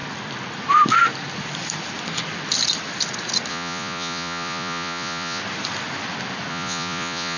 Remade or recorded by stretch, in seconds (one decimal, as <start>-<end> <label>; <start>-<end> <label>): 0.0-3.5 recorded; 3.5-5.4 remade; 5.4-6.5 recorded; 6.5-7.4 remade

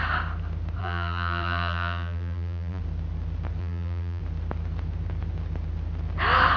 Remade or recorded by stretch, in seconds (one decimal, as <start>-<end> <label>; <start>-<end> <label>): 0.0-0.8 recorded; 0.8-2.8 remade; 2.8-3.6 recorded; 3.6-4.2 remade; 4.2-6.6 recorded

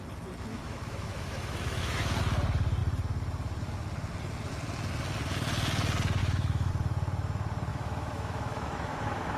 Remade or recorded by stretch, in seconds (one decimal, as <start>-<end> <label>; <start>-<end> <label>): 0.0-0.5 recorded; 0.5-2.2 remade; 2.2-6.2 recorded; 6.2-6.7 remade; 6.7-7.7 recorded; 7.7-9.4 remade

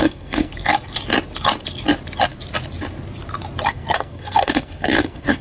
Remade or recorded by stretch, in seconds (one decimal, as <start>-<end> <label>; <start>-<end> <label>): 0.0-0.5 remade; 0.5-3.7 recorded; 3.7-5.4 remade

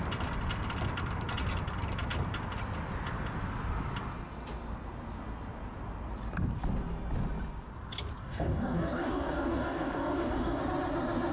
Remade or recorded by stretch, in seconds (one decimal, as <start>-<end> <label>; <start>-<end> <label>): 0.0-8.2 recorded; 8.2-10.6 remade; 10.6-11.3 recorded

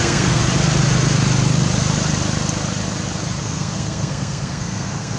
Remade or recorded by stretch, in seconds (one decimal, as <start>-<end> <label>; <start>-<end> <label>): 0.0-0.4 remade; 0.4-3.4 recorded; 3.4-5.2 remade

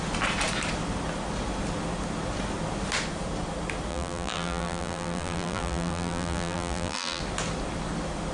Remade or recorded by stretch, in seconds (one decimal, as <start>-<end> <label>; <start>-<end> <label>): 0.0-3.9 recorded; 3.9-7.2 remade; 7.2-8.3 recorded

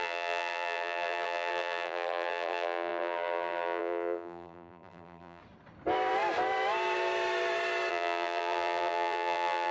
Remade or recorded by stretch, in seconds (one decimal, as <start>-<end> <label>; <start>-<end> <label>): 0.0-5.4 remade; 5.4-7.9 recorded; 7.9-9.7 remade